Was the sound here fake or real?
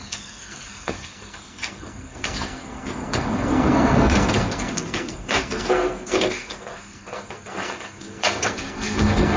fake